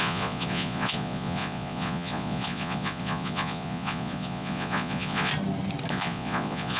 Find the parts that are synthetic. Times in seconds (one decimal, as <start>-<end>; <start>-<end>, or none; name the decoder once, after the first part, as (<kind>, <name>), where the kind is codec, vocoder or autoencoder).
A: 0.0-5.3 (vocoder, Vocos); 5.9-6.8